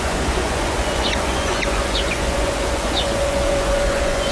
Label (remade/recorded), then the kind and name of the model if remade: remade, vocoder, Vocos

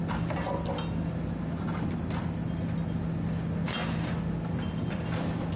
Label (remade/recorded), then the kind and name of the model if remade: recorded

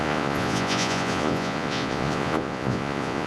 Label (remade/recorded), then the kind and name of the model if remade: remade, vocoder, Vocos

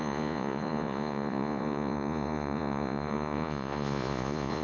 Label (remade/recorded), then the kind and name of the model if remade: remade, vocoder, Vocos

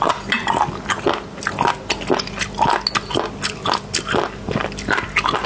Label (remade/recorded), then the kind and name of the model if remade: recorded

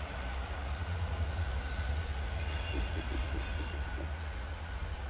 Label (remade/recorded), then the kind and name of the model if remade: remade, vocoder, Vocos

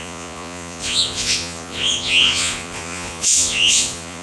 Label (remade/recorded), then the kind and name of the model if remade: remade, vocoder, Vocos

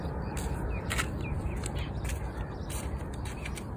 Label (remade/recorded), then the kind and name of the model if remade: recorded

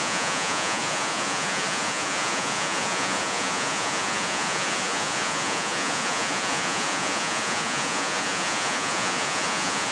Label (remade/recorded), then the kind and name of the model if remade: remade, vocoder, Vocos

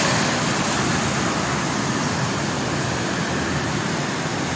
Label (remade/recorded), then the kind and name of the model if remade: recorded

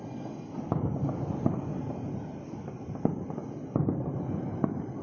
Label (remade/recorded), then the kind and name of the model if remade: recorded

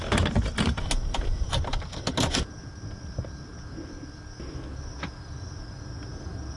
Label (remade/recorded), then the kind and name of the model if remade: recorded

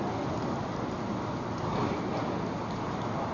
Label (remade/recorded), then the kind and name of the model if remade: recorded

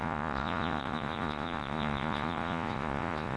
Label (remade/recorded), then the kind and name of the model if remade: remade, vocoder, Vocos